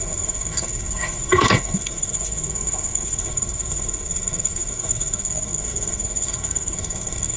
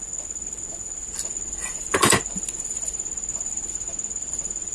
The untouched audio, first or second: second